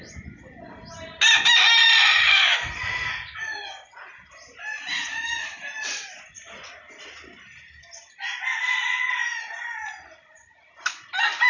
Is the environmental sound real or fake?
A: real